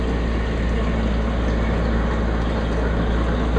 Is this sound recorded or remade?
recorded